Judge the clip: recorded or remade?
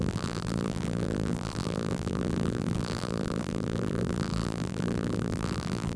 remade